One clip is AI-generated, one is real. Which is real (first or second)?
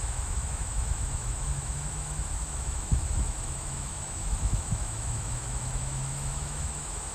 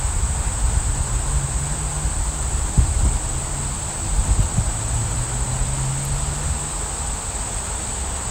second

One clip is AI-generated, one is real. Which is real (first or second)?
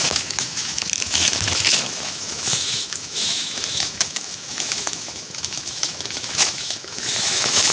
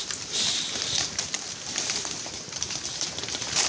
second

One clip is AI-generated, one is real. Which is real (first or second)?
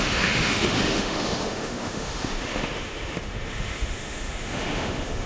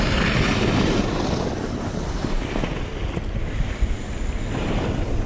second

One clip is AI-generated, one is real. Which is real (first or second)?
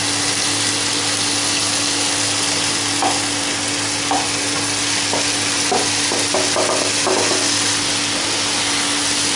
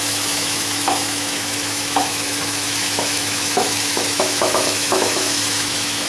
first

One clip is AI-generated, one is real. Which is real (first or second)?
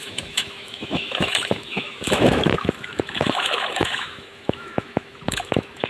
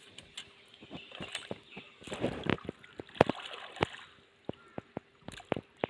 second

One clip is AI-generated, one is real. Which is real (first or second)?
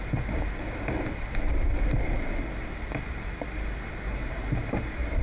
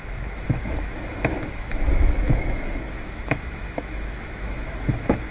first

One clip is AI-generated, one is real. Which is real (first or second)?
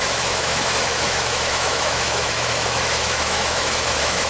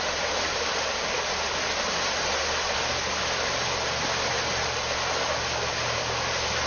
second